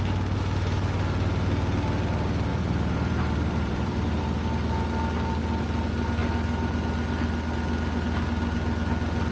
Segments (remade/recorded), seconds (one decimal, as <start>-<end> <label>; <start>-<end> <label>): 0.0-2.5 recorded; 2.5-4.2 remade; 4.2-9.3 recorded